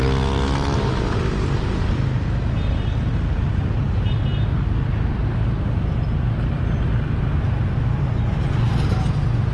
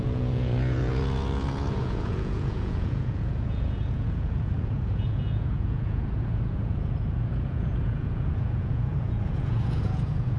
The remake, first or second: second